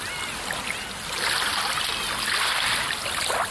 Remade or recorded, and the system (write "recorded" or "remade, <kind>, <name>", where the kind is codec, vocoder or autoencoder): recorded